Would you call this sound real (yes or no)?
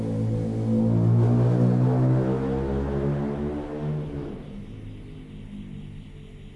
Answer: yes